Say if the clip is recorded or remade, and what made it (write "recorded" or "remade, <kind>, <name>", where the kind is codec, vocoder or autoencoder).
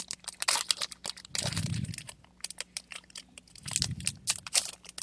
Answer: recorded